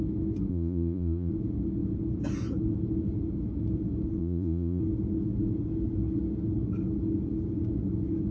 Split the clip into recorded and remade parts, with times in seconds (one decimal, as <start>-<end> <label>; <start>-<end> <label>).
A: 0.0-0.5 recorded; 0.5-1.3 remade; 1.3-4.2 recorded; 4.2-4.8 remade; 4.8-8.3 recorded